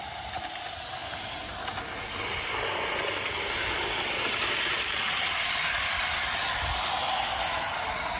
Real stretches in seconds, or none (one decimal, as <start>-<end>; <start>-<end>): 0.0-8.2